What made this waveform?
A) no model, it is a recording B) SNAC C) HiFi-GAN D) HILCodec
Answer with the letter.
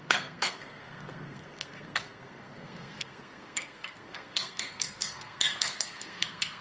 B